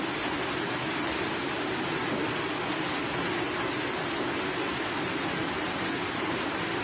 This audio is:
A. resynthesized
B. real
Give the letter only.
B